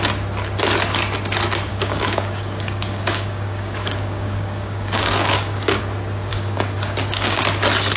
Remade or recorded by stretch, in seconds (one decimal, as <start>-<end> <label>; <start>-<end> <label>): 0.0-1.7 recorded; 1.7-5.8 remade; 5.8-6.3 recorded; 6.3-7.4 remade; 7.4-8.0 recorded